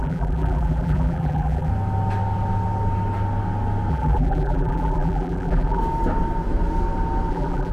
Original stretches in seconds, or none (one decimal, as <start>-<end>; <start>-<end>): 1.7-3.9; 5.8-7.3